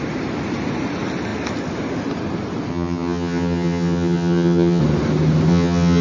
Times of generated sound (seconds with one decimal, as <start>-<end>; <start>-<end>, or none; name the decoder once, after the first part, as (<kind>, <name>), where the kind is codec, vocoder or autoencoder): 2.7-4.8 (vocoder, HiFi-GAN); 5.5-6.0